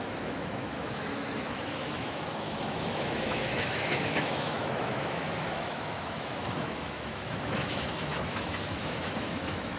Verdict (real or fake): fake